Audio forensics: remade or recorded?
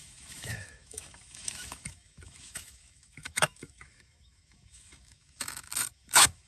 remade